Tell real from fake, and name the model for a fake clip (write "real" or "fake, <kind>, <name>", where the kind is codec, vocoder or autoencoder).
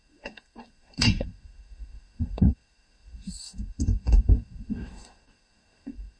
fake, codec, SNAC